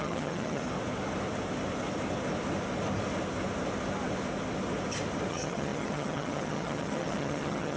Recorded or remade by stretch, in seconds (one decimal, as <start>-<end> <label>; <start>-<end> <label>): 0.0-0.6 remade; 0.6-5.3 recorded; 5.3-7.8 remade